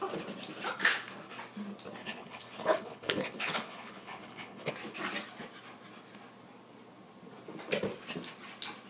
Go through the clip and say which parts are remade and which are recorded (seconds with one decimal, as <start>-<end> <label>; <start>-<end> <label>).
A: 0.0-2.0 recorded; 2.0-4.7 remade; 4.7-8.9 recorded